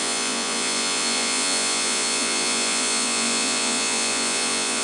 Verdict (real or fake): fake